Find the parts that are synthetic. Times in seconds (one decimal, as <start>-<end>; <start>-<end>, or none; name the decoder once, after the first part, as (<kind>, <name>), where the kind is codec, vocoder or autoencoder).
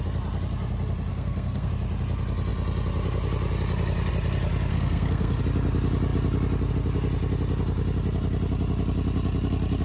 1.1-1.7 (codec, SNAC); 4.7-5.4